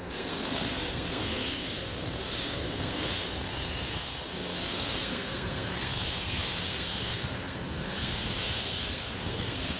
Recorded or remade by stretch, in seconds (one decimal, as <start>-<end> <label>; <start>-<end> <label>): 0.0-9.8 remade